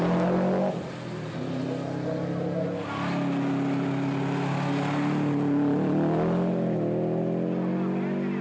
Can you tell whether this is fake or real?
real